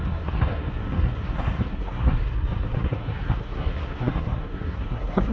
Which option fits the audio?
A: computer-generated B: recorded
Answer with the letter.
A